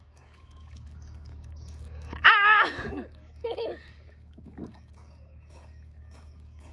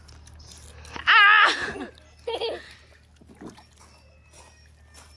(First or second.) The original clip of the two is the second